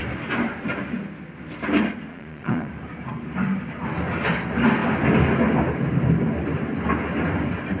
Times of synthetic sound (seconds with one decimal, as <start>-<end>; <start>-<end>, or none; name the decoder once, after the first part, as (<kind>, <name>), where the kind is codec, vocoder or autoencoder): 2.1-2.7 (vocoder, Vocos)